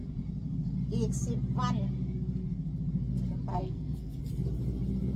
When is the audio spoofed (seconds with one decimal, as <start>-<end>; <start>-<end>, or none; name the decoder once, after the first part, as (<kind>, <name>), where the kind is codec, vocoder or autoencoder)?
3.5-4.2 (codec, SNAC)